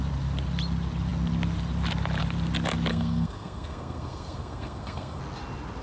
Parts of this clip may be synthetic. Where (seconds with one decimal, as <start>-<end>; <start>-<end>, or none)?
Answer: 2.9-5.2